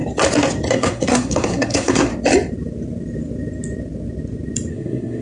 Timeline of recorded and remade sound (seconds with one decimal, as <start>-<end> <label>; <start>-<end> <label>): 0.0-0.7 recorded; 0.7-2.1 remade; 2.1-4.7 recorded; 4.7-5.2 remade